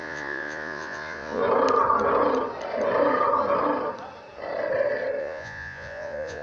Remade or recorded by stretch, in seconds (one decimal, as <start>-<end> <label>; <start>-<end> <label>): 0.0-1.4 remade; 1.4-5.2 recorded; 5.2-6.4 remade